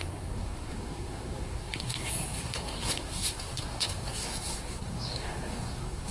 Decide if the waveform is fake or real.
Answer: fake